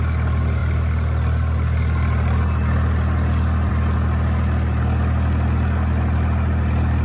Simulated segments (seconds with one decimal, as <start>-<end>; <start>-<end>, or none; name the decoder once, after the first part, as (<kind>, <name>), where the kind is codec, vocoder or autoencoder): none